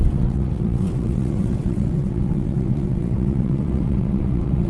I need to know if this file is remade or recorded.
remade